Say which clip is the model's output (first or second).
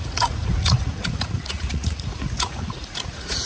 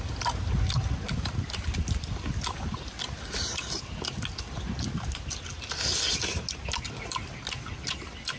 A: first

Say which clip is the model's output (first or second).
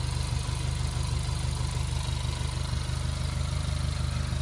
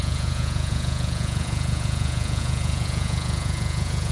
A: second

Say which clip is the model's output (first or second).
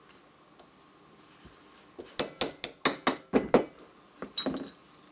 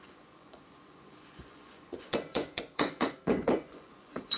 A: second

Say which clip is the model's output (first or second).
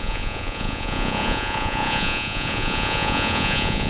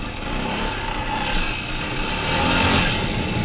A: first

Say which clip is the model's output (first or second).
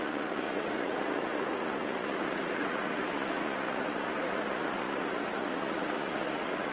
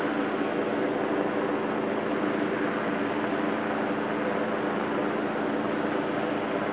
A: first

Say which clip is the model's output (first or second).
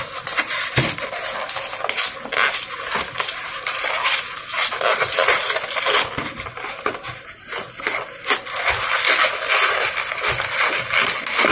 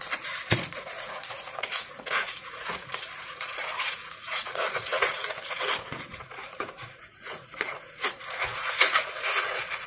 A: second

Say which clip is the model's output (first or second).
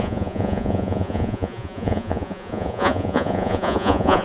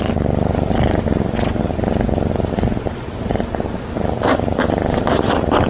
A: first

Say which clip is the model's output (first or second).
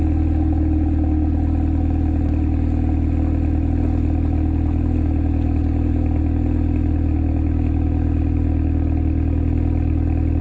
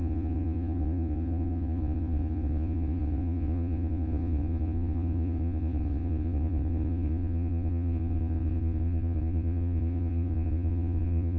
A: second